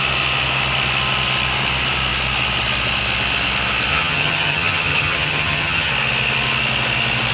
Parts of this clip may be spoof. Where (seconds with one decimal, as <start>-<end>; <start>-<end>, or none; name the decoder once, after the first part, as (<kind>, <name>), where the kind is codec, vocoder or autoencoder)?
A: 3.9-5.9 (vocoder, HiFi-GAN)